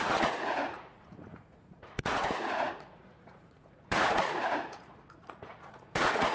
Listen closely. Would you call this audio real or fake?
fake